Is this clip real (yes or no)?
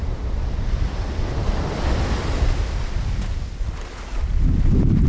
yes